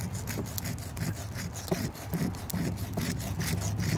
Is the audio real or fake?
real